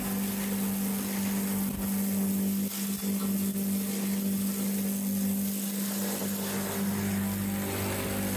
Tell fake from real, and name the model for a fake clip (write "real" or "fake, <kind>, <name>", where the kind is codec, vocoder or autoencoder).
real